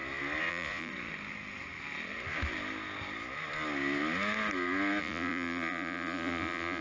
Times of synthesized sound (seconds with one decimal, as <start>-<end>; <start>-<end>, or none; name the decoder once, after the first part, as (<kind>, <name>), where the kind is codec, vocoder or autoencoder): 0.5-0.9 (vocoder, Vocos); 5.0-6.8